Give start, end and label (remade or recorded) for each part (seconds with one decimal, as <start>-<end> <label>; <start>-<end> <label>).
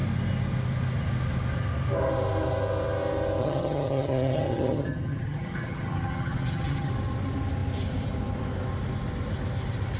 0.0-3.4 recorded; 3.4-6.9 remade; 6.9-10.0 recorded